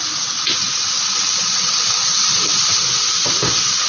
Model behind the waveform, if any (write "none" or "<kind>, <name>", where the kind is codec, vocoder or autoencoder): none